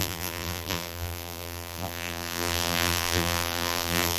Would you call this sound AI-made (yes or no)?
yes